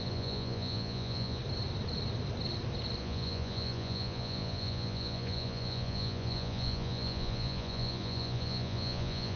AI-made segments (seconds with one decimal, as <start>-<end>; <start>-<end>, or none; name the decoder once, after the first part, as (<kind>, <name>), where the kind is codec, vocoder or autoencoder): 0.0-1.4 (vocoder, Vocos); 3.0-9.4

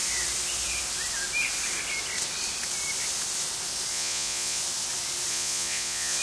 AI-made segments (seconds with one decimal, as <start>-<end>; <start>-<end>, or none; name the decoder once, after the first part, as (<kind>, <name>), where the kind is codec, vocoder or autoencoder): 3.9-4.6 (vocoder, Vocos); 5.3-6.2

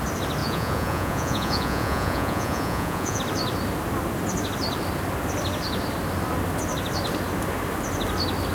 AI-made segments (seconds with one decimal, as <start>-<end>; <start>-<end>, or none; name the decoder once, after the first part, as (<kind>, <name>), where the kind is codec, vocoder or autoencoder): 0.4-3.2 (vocoder, Vocos)